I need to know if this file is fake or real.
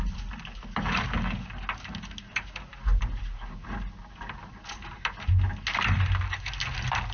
real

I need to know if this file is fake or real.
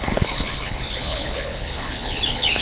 fake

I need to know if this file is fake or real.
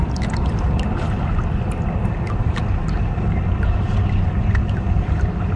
real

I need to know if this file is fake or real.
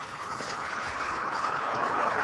fake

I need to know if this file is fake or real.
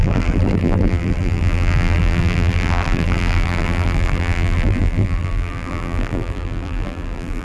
fake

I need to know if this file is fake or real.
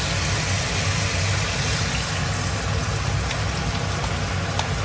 real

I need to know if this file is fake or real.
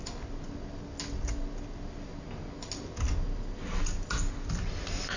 real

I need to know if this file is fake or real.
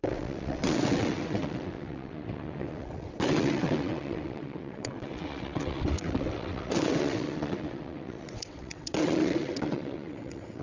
fake